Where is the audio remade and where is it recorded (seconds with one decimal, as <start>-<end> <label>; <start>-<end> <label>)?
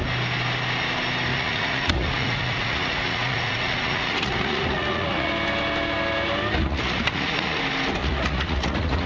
0.0-1.3 recorded; 1.3-5.3 remade; 5.3-6.6 recorded; 6.6-7.6 remade; 7.6-8.0 recorded; 8.0-9.1 remade